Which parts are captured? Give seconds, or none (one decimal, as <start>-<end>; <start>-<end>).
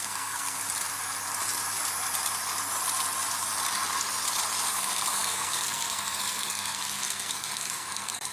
0.6-4.8